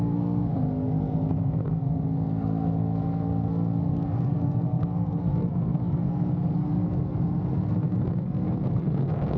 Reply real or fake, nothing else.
fake